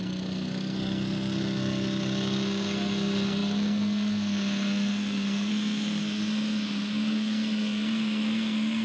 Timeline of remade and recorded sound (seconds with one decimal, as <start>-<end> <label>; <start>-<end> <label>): 0.0-8.8 remade